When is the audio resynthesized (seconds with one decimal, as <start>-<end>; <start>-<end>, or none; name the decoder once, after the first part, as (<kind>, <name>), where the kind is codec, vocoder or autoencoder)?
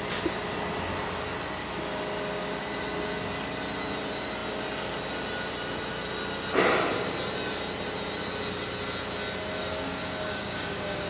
9.6-11.1 (codec, DAC)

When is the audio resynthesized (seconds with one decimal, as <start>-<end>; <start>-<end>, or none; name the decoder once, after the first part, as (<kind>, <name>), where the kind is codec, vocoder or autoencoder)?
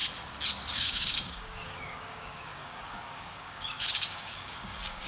0.7-5.1 (codec, DAC)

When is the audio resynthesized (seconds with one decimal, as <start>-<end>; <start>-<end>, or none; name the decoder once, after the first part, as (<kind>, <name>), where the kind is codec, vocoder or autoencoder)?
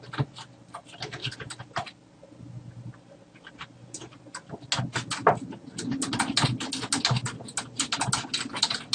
none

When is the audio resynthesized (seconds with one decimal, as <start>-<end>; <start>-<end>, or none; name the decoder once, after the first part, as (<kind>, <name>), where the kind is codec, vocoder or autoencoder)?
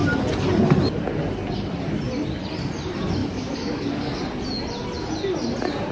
3.2-4.2 (codec, DAC)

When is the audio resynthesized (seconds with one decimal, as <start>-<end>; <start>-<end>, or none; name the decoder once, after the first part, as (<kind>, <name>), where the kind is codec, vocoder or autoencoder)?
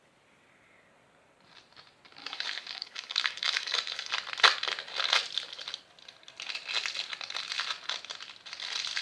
2.2-4.1 (codec, DAC)